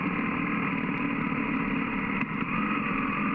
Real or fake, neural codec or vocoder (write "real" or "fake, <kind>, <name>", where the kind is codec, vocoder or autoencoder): real